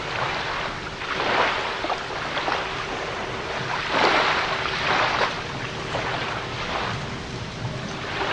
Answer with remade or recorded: remade